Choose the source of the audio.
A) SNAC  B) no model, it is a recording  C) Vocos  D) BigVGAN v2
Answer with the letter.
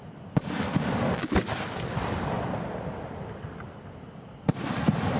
D